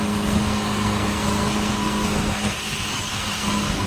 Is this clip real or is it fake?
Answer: fake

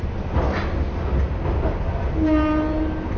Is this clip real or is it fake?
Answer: real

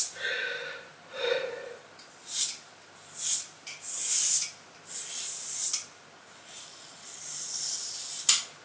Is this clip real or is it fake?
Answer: real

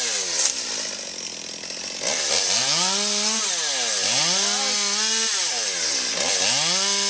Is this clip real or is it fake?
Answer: real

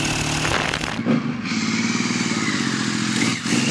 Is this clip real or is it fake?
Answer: real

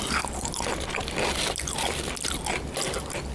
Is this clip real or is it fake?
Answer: real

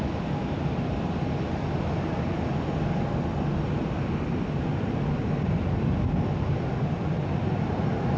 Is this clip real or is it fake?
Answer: real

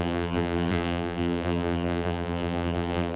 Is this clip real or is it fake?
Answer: fake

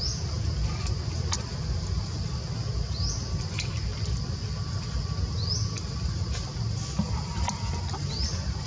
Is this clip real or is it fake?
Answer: real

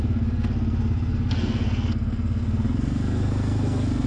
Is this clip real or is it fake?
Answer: fake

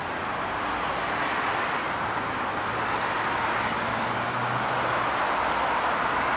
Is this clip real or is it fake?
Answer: real